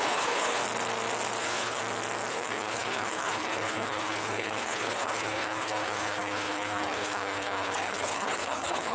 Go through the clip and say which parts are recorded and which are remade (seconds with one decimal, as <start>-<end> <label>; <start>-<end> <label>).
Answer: 0.0-0.6 remade; 0.6-1.4 recorded; 1.4-1.8 remade; 1.8-2.3 recorded; 2.3-8.9 remade